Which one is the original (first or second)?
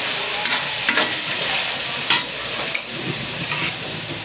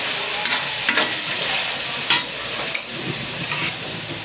second